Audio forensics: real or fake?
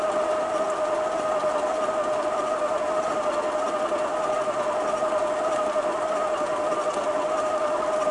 real